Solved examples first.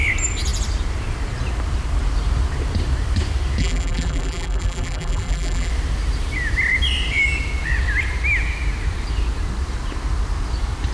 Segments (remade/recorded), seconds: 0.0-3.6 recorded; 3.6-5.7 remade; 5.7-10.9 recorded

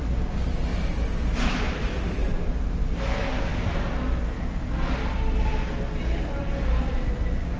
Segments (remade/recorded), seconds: 0.0-3.5 remade; 3.5-7.6 recorded

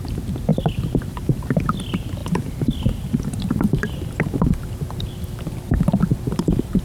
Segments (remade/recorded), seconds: 0.0-0.5 recorded; 0.5-1.7 remade; 1.7-2.2 recorded; 2.2-5.0 remade; 5.0-6.1 recorded; 6.1-6.8 remade

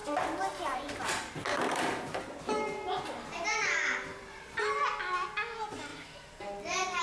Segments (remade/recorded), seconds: 0.0-3.0 remade; 3.0-4.1 recorded; 4.1-4.8 remade; 4.8-5.9 recorded; 5.9-7.0 remade

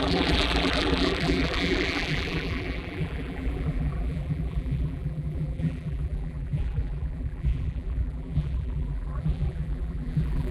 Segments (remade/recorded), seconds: 0.0-10.5 remade

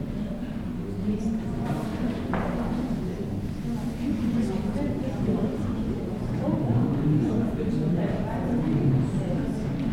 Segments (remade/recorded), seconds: 0.0-1.9 recorded; 1.9-3.0 remade; 3.0-5.5 recorded; 5.5-7.3 remade; 7.3-9.9 recorded

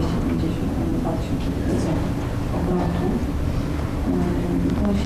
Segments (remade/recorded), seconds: 0.0-3.2 recorded; 3.2-4.3 remade; 4.3-5.1 recorded